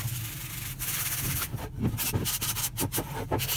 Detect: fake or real fake